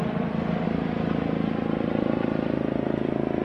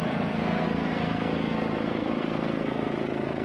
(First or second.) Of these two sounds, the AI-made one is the second